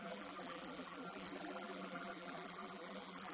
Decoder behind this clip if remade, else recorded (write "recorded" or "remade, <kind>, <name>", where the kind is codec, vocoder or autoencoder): remade, vocoder, BigVGAN v2